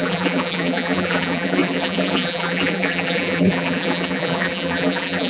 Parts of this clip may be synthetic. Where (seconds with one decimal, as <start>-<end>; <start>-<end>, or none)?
0.0-5.3